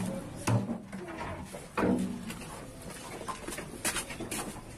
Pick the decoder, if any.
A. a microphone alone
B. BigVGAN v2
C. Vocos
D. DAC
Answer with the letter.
A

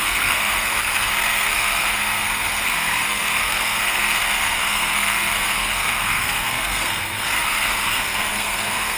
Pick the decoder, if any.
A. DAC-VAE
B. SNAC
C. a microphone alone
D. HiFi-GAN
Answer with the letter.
B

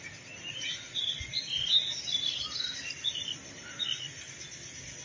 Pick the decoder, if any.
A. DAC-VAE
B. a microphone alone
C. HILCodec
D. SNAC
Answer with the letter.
B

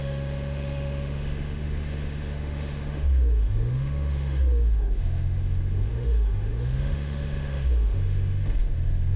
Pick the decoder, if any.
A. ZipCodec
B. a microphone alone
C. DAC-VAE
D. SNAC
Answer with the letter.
C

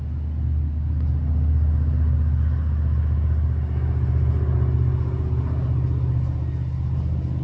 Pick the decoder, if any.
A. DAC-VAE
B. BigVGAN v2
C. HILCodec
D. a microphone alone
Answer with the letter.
D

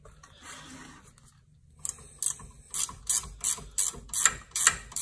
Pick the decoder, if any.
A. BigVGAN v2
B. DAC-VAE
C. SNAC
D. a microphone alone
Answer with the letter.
D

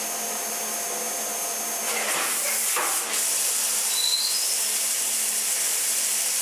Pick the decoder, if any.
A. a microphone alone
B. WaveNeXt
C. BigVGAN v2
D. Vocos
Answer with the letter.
A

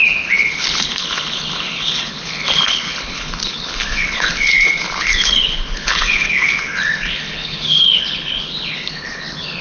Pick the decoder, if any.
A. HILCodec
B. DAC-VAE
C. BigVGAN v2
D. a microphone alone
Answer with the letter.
A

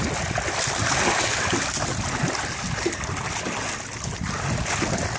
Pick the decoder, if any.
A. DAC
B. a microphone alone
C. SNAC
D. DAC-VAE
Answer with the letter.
B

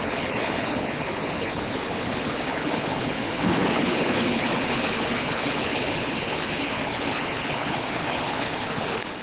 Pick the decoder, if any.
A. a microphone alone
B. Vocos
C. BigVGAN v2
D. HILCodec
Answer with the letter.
D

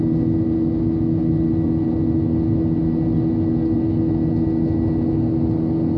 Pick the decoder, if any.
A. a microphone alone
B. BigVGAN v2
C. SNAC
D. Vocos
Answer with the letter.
A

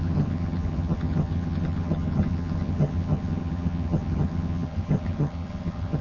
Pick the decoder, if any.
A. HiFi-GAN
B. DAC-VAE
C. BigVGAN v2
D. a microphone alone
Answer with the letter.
A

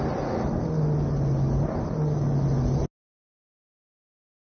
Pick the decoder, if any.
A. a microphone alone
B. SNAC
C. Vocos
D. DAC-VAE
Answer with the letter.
A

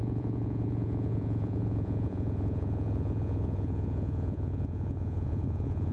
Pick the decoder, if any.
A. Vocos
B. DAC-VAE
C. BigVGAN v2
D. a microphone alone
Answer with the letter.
A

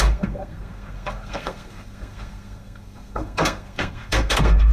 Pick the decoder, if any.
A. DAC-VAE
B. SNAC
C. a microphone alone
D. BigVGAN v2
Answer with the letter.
B